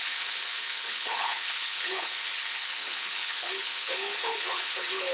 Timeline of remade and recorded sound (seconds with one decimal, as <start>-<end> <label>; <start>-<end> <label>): 0.0-5.1 remade